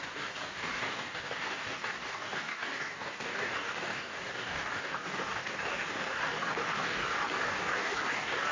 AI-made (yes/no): yes